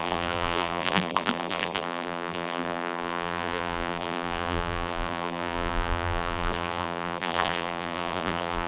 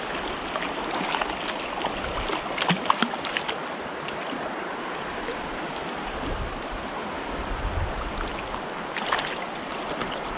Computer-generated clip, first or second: first